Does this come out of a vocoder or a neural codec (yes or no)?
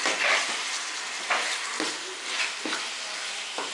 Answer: no